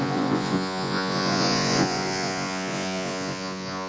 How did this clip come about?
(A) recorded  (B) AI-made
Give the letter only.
B